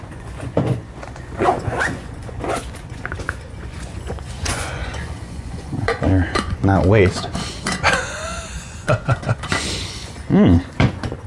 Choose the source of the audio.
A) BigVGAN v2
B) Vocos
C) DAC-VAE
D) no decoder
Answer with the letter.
B